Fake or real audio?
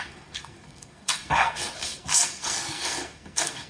fake